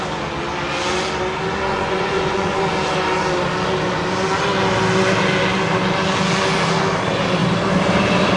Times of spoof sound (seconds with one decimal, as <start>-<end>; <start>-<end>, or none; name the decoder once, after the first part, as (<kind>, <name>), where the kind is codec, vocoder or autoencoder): 1.7-2.6 (vocoder, Vocos)